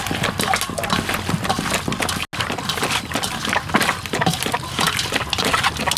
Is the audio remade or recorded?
recorded